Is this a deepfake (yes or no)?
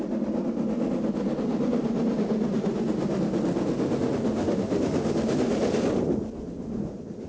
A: no